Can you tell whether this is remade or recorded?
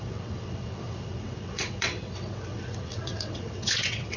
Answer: remade